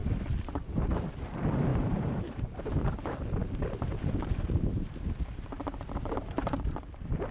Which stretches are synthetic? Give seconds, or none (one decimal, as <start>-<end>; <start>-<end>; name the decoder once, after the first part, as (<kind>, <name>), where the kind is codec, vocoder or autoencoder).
0.0-1.1 (vocoder, BigVGAN v2); 1.7-2.6; 3.4-7.3